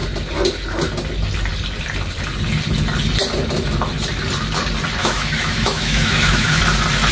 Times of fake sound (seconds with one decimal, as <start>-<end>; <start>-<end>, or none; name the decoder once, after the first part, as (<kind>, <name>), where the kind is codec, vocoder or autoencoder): 5.0-6.6 (autoencoder, DAC-VAE)